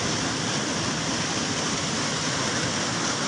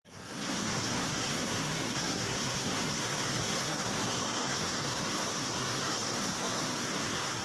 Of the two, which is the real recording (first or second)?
first